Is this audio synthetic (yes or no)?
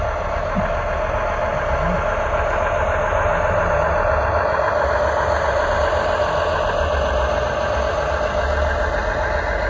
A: no